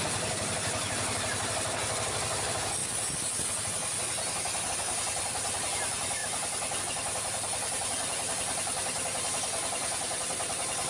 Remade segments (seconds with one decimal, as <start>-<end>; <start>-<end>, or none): 0.0-2.8; 4.7-10.9